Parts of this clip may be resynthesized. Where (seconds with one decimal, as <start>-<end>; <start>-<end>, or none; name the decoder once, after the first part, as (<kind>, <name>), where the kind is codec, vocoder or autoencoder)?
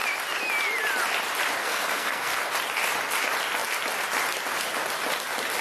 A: 1.6-2.5 (codec, SNAC)